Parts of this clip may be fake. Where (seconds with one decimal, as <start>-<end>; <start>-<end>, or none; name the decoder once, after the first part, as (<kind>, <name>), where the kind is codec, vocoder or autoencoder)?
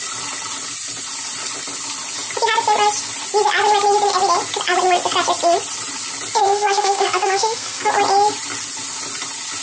6.4-7.9 (codec, SNAC)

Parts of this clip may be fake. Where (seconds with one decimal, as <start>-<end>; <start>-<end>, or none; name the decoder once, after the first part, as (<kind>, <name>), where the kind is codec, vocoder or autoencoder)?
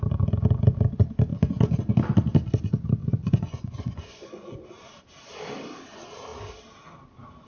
1.3-1.8 (vocoder, Vocos); 3.0-4.6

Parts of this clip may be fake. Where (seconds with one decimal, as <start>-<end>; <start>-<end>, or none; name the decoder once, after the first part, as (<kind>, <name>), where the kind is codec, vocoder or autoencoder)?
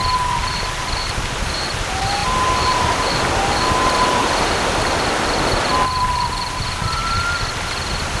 0.8-7.0 (vocoder, BigVGAN v2)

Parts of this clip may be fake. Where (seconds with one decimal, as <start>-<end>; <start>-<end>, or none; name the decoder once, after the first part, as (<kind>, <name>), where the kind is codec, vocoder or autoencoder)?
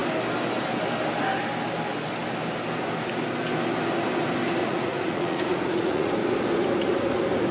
4.6-6.1 (vocoder, Vocos)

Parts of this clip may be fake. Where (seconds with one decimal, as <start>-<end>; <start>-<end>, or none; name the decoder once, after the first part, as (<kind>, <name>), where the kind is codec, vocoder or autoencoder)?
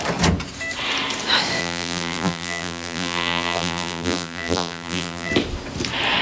1.6-5.3 (vocoder, BigVGAN v2)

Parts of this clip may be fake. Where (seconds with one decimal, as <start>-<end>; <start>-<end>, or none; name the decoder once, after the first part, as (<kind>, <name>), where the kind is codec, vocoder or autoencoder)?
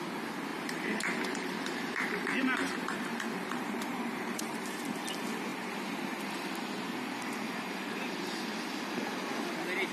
0.5-5.0 (vocoder, BigVGAN v2)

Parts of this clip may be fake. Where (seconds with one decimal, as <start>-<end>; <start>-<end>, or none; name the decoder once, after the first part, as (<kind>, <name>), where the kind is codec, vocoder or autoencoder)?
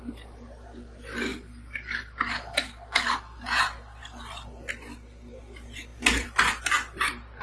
5.9-6.6 (vocoder, BigVGAN v2)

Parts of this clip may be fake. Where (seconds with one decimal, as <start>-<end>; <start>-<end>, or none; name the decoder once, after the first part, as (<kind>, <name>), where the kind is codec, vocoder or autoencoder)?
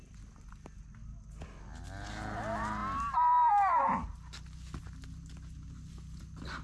none